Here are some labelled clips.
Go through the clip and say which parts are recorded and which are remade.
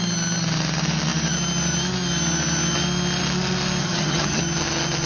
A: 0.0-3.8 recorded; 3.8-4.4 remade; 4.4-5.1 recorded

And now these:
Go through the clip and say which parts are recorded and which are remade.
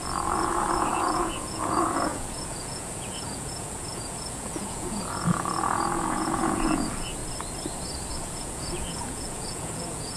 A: 0.0-7.2 remade; 7.2-8.1 recorded; 8.1-10.2 remade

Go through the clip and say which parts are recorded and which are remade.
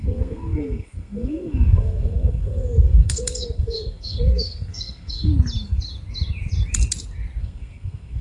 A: 0.0-5.3 remade; 5.3-7.4 recorded; 7.4-8.2 remade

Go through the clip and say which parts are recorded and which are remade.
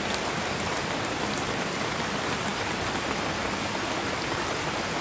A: 0.0-5.0 recorded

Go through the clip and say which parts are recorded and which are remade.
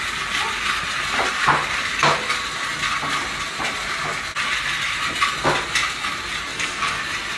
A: 0.0-6.5 recorded; 6.5-7.0 remade; 7.0-7.4 recorded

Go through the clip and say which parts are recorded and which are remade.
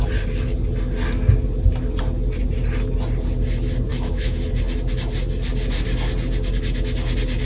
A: 0.0-3.9 recorded; 3.9-4.5 remade; 4.5-7.5 recorded